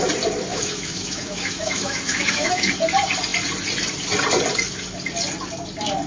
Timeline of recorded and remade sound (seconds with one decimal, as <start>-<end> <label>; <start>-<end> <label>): 0.0-0.5 recorded; 0.5-2.7 remade; 2.7-6.1 recorded